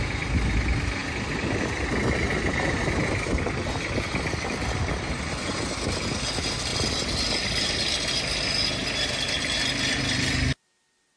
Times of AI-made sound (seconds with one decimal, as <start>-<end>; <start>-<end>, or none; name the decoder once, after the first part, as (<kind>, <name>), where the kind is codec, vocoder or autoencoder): none